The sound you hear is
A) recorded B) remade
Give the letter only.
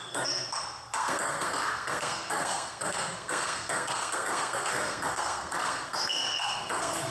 B